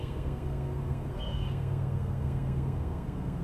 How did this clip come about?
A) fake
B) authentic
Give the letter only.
A